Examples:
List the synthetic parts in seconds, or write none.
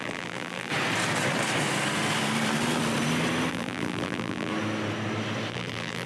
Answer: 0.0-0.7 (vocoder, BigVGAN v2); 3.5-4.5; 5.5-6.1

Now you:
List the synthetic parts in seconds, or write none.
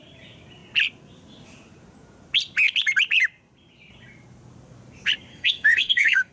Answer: 5.3-6.3 (codec, SNAC)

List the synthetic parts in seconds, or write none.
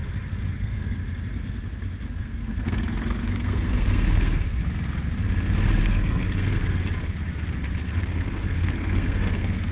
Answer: 0.6-1.0 (codec, SNAC); 2.1-4.6; 5.8-6.6; 7.8-9.7